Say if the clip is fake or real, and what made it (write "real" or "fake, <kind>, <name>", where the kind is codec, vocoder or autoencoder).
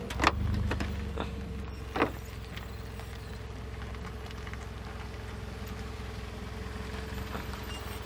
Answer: real